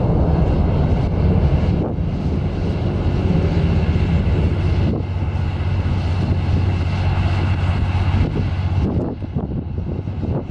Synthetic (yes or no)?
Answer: no